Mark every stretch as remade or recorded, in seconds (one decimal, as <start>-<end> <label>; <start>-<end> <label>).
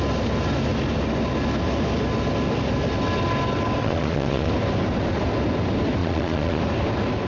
0.0-3.8 recorded; 3.8-4.5 remade; 4.5-6.0 recorded; 6.0-6.6 remade; 6.6-7.3 recorded